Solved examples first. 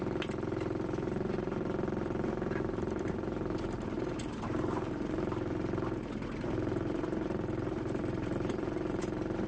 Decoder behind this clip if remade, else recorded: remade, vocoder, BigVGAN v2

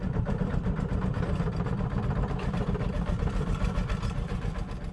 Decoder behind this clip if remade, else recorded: remade, vocoder, BigVGAN v2